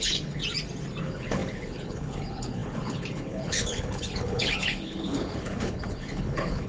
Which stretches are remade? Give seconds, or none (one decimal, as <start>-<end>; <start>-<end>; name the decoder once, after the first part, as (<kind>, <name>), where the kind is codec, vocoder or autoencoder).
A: 0.0-0.4 (codec, HILCodec); 1.0-6.7